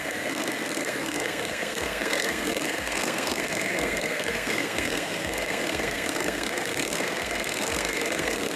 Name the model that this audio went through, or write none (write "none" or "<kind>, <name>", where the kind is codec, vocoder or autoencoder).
codec, SNAC